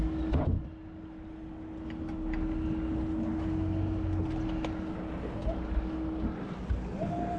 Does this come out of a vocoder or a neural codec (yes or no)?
no